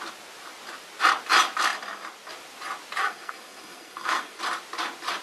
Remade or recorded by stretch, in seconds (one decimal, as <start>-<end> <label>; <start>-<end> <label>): 0.0-3.0 recorded; 3.0-4.4 remade; 4.4-5.2 recorded